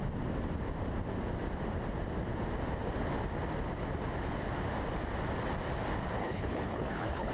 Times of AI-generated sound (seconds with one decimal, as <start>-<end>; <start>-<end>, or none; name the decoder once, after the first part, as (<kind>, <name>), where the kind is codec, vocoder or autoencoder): 6.2-7.3 (codec, HILCodec)